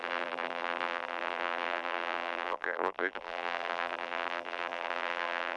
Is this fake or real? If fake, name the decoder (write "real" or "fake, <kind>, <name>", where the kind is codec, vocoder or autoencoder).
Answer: fake, vocoder, BigVGAN v2